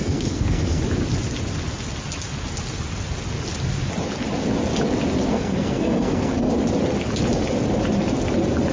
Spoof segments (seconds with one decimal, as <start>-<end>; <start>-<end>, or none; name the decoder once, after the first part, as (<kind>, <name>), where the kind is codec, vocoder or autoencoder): 0.0-0.8 (codec, SNAC); 5.3-6.5